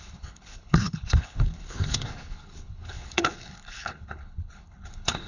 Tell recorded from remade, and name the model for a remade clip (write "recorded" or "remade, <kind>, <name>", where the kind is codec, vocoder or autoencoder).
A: remade, codec, HILCodec